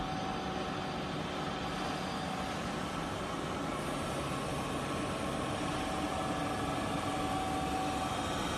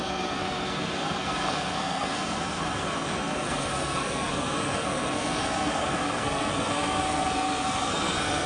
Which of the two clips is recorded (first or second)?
first